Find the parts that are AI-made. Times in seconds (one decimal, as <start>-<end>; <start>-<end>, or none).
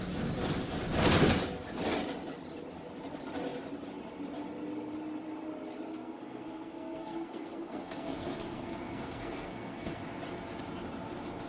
5.9-10.0